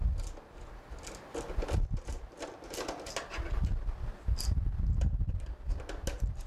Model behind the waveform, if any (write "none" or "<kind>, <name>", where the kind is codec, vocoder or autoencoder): none